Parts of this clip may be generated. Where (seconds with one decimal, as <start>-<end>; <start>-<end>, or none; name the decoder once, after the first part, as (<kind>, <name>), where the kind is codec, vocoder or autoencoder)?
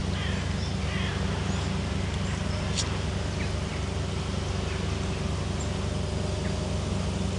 none